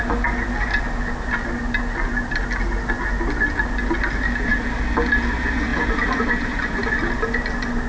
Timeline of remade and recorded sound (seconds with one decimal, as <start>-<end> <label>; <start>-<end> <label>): 0.0-7.9 recorded